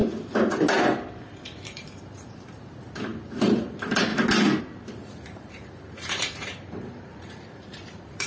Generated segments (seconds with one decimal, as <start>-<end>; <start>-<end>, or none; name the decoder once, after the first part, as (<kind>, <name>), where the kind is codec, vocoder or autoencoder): 1.1-4.1 (vocoder, BigVGAN v2); 4.6-8.3